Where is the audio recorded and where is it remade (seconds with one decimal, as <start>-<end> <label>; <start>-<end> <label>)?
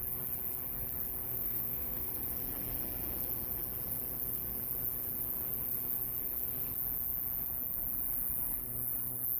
0.0-1.3 recorded; 1.3-2.1 remade; 2.1-9.4 recorded